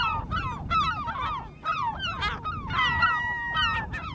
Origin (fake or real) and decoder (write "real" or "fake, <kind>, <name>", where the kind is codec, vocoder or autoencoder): real